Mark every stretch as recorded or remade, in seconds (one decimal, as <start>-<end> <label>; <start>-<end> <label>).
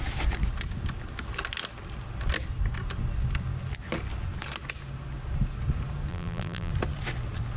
0.0-6.1 recorded; 6.1-6.7 remade; 6.7-7.6 recorded